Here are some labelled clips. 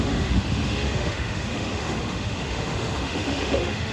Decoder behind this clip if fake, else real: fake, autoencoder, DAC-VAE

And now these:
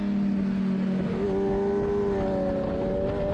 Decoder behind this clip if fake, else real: real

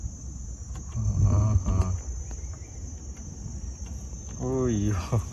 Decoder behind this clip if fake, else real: real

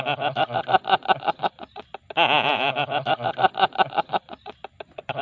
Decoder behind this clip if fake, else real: real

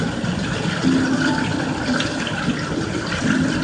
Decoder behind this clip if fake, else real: real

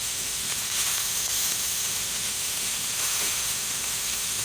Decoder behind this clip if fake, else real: fake, autoencoder, DAC-VAE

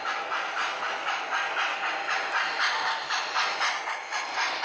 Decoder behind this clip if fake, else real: real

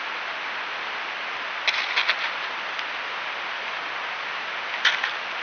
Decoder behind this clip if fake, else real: real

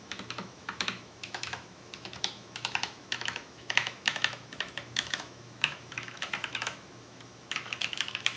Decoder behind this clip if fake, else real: fake, autoencoder, DAC-VAE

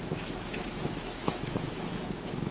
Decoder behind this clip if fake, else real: fake, autoencoder, DAC-VAE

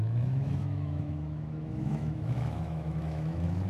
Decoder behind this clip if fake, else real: fake, autoencoder, DAC-VAE